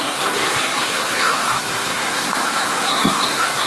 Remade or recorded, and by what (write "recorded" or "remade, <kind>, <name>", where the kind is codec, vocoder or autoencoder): remade, codec, SNAC